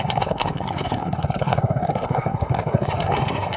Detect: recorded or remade remade